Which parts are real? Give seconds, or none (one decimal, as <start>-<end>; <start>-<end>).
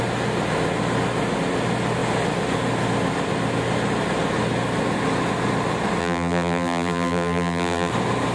0.0-6.0; 7.9-8.3